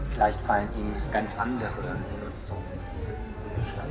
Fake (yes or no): no